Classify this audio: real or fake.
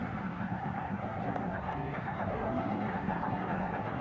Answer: fake